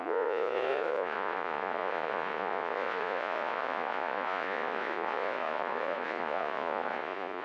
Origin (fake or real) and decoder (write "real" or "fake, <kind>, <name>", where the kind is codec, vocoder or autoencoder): fake, vocoder, Vocos